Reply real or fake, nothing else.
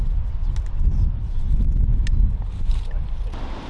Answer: real